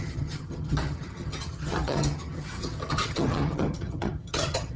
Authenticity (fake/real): fake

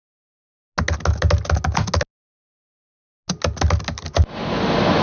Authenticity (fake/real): real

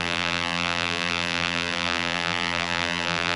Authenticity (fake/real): fake